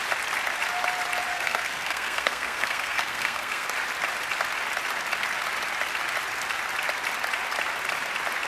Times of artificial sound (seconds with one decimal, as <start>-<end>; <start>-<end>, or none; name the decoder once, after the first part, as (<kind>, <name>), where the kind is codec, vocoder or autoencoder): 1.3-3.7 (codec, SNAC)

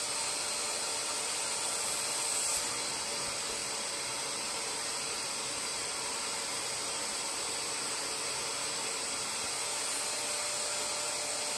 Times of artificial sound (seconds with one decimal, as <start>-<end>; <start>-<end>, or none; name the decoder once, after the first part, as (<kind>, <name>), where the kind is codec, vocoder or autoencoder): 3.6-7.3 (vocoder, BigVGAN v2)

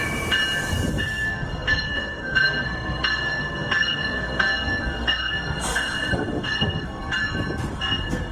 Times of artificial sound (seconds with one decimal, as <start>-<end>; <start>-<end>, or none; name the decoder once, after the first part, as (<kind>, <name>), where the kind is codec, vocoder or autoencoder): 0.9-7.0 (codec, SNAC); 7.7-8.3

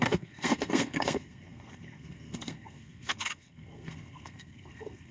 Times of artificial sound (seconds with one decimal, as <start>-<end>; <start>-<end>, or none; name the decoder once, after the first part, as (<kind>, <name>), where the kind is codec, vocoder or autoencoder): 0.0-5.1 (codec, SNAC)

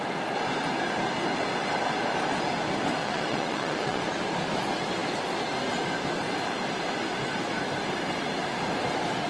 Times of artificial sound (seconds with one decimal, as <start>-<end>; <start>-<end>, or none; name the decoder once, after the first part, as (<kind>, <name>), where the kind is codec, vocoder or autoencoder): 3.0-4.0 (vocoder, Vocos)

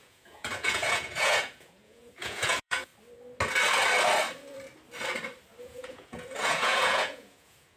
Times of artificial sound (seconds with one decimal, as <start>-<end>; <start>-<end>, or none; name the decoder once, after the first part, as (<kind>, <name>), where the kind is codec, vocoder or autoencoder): 0.0-2.9 (vocoder, Vocos); 5.6-7.8

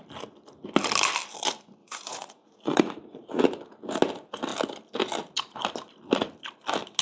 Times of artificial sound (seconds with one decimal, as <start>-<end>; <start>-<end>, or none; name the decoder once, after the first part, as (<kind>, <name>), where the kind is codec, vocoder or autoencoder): 1.8-3.4 (vocoder, Vocos)